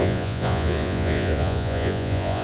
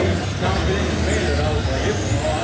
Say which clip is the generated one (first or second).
first